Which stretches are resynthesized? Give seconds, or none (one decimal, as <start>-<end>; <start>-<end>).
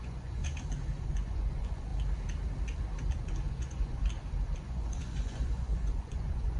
0.0-0.4; 1.0-1.9; 3.5-4.0; 4.6-6.6